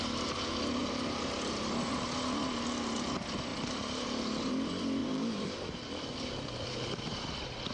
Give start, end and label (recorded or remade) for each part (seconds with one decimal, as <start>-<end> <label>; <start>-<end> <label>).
0.0-0.8 recorded; 0.8-1.9 remade; 1.9-3.5 recorded; 3.5-4.5 remade; 4.5-5.0 recorded; 5.0-5.8 remade; 5.8-7.7 recorded